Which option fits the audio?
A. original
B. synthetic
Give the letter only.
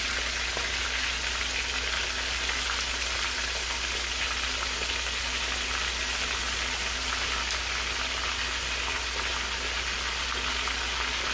A